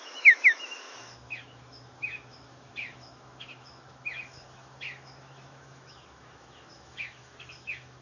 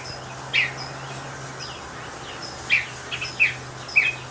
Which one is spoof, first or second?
first